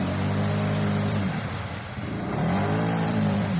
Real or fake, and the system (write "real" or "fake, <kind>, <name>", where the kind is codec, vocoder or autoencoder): fake, vocoder, BigVGAN v2